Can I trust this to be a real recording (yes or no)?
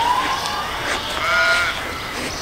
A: yes